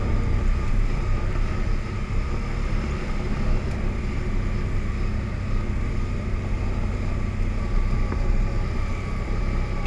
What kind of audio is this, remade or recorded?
recorded